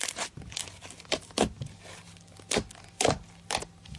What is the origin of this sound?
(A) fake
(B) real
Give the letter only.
B